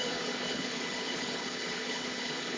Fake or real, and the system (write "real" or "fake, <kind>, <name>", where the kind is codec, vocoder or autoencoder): fake, codec, HILCodec